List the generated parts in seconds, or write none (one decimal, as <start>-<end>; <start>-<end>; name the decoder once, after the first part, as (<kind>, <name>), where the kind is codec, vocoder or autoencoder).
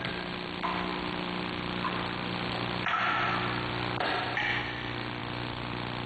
none